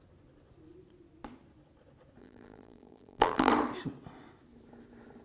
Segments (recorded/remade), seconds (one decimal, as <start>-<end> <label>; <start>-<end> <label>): 0.0-2.2 recorded; 2.2-3.5 remade; 3.5-5.2 recorded